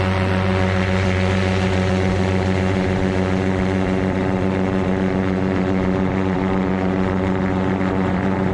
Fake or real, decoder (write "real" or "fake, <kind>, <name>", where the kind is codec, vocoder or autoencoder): fake, vocoder, Vocos